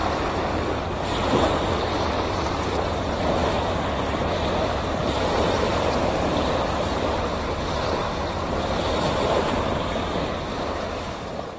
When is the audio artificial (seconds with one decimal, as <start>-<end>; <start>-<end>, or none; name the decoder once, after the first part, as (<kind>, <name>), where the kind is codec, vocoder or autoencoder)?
1.3-11.6 (vocoder, BigVGAN v2)